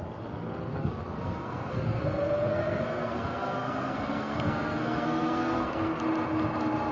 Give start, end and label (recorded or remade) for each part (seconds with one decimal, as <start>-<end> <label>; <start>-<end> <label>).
0.0-0.7 recorded; 0.7-2.0 remade; 2.0-2.5 recorded; 2.5-6.0 remade; 6.0-6.9 recorded